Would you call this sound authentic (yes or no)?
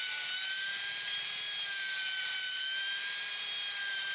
yes